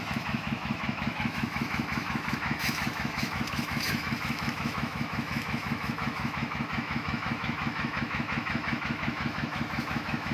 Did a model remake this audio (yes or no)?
yes